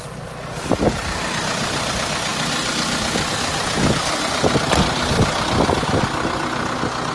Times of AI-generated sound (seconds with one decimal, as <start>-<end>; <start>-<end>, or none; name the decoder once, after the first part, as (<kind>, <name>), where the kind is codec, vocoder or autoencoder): none